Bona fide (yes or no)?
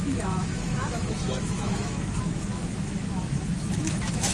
no